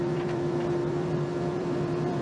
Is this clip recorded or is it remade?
remade